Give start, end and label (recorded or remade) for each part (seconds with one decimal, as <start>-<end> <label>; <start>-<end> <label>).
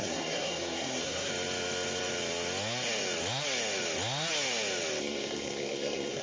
0.0-1.3 remade; 1.3-5.0 recorded; 5.0-6.2 remade